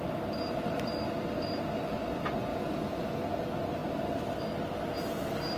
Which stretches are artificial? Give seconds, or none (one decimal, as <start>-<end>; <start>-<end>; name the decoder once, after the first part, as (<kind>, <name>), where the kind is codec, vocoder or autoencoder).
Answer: 2.5-3.2 (vocoder, Vocos)